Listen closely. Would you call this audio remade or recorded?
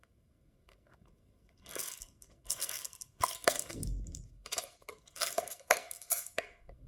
remade